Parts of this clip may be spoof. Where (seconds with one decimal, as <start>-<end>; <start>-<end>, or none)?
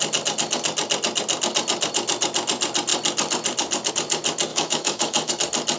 4.5-5.3